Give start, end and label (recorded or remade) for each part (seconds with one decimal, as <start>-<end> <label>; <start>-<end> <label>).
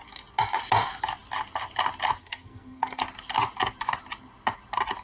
0.0-2.2 recorded; 2.2-3.0 remade; 3.0-5.0 recorded